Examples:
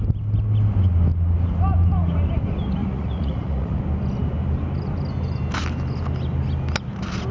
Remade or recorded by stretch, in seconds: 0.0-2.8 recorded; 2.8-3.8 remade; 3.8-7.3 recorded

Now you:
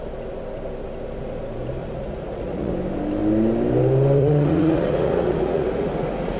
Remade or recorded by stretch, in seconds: 0.0-1.8 recorded; 1.8-2.7 remade; 2.7-4.2 recorded; 4.2-6.4 remade

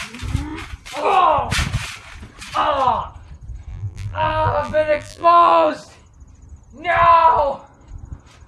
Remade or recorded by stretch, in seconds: 0.0-3.7 recorded; 3.7-5.7 remade; 5.7-8.5 recorded

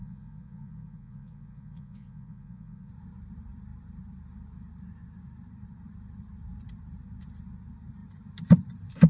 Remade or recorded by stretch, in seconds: 0.0-2.9 remade; 2.9-9.1 recorded

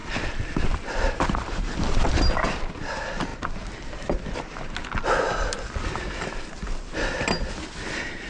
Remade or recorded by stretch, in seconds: 0.0-2.1 remade; 2.1-8.3 recorded